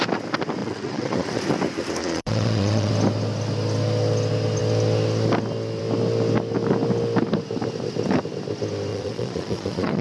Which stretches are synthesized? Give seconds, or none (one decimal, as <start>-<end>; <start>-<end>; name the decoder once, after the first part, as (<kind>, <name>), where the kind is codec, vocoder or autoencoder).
0.6-1.4 (vocoder, Vocos); 2.0-2.9; 8.9-10.0

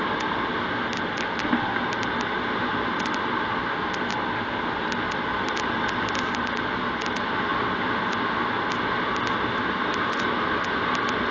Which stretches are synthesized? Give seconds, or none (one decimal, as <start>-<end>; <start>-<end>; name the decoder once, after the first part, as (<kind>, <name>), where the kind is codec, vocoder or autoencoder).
none